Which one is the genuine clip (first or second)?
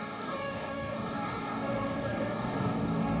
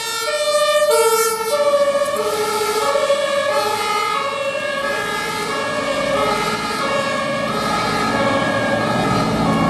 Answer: second